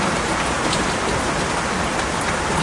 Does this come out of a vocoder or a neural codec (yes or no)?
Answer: no